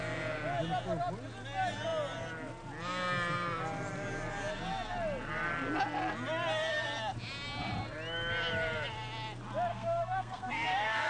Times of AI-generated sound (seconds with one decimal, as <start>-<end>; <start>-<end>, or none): 9.7-11.1